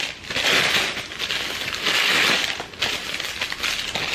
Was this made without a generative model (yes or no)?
yes